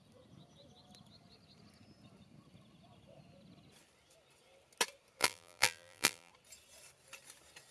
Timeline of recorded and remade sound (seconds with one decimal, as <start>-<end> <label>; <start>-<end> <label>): 0.0-5.2 recorded; 5.2-6.3 remade; 6.3-7.7 recorded

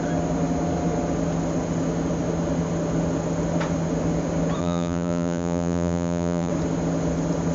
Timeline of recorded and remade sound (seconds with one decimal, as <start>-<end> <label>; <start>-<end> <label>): 0.0-4.6 recorded; 4.6-6.5 remade; 6.5-7.5 recorded

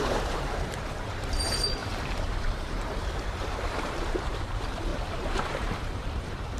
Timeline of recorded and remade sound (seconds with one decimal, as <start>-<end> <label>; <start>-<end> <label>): 0.0-6.6 remade

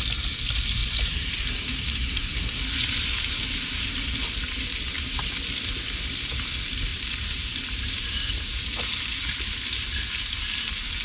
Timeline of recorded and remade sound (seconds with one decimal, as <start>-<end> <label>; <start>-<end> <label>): 0.0-0.8 recorded; 0.8-2.4 remade; 2.4-6.9 recorded; 6.9-9.5 remade; 9.5-11.0 recorded